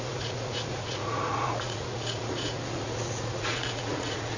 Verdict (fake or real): fake